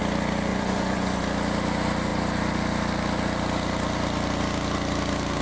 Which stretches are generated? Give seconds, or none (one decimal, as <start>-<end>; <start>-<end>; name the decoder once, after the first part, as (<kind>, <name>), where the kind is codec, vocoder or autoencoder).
0.5-1.2 (vocoder, Vocos)